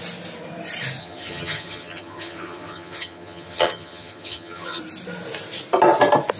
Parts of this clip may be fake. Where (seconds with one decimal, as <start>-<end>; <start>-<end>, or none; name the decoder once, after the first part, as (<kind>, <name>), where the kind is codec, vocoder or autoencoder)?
1.0-4.8 (vocoder, HiFi-GAN)